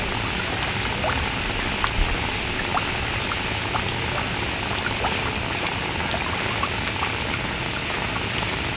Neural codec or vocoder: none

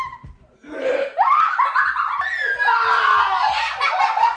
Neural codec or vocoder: none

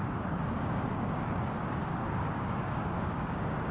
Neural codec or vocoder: codec, DAC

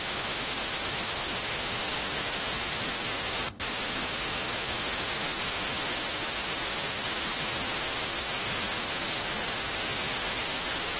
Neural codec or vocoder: autoencoder, DAC-VAE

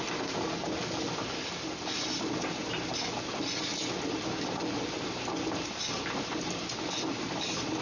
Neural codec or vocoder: none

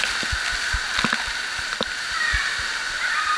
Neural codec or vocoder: none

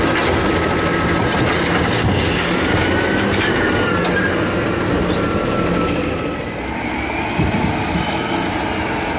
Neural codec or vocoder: none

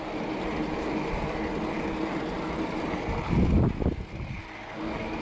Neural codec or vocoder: none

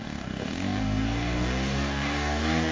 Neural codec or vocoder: codec, DAC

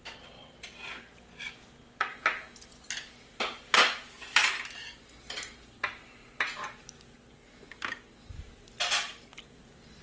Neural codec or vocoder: none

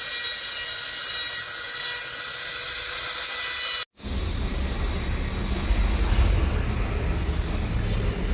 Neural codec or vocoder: none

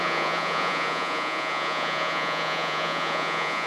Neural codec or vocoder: vocoder, Vocos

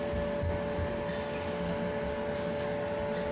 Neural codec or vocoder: none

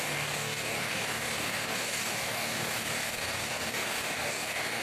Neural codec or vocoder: codec, DAC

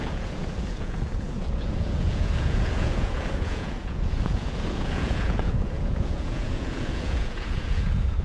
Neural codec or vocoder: vocoder, Vocos